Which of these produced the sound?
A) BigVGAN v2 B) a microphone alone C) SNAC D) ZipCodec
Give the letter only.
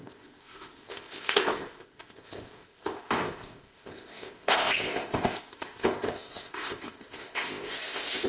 D